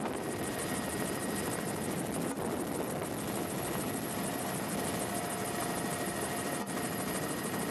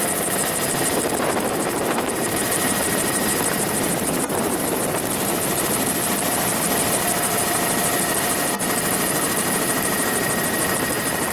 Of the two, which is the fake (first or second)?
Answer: second